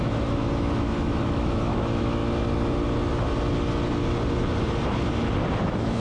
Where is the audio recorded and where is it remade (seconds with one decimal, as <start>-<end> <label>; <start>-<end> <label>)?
0.0-2.2 remade; 2.2-5.6 recorded; 5.6-6.0 remade